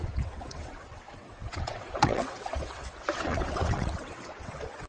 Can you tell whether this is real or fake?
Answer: fake